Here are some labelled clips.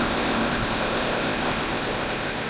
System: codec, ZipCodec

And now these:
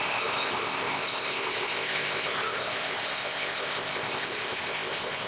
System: codec, ZipCodec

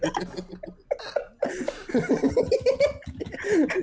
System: none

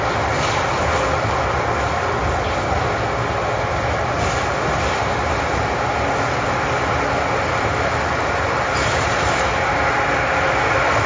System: none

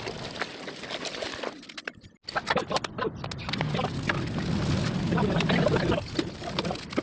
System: none